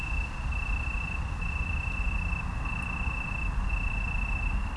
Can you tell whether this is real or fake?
real